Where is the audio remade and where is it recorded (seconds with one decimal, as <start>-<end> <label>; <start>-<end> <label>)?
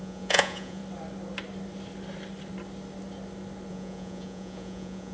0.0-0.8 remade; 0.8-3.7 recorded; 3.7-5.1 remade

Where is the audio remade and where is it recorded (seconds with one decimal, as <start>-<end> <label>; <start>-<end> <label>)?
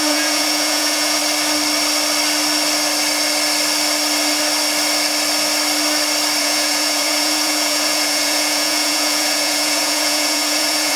0.0-1.2 remade; 1.2-6.4 recorded; 6.4-11.0 remade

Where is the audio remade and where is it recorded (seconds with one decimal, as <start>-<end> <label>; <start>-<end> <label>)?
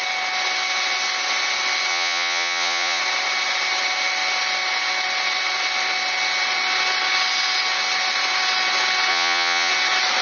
0.0-1.9 recorded; 1.9-3.0 remade; 3.0-9.1 recorded; 9.1-9.7 remade; 9.7-10.2 recorded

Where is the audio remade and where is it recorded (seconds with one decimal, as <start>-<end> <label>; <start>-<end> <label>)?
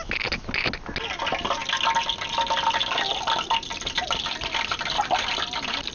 0.0-5.9 recorded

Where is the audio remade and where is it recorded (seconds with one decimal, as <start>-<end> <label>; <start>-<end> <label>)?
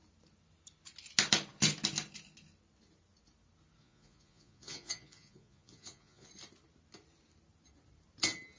0.0-3.8 recorded; 3.8-6.3 remade; 6.3-8.6 recorded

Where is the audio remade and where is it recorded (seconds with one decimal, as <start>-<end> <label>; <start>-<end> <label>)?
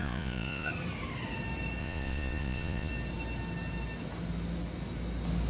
0.0-0.7 remade; 0.7-1.8 recorded; 1.8-2.9 remade; 2.9-5.5 recorded